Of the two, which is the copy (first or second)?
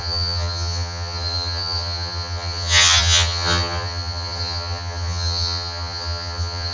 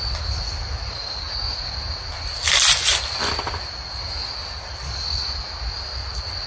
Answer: first